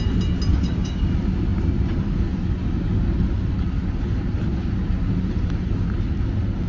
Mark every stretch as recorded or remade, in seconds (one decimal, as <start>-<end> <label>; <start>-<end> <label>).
0.0-0.5 recorded; 0.5-1.1 remade; 1.1-6.7 recorded